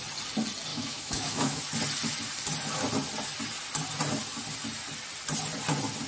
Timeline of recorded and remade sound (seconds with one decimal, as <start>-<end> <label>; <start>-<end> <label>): 0.0-0.7 recorded; 0.7-1.6 remade; 1.6-6.1 recorded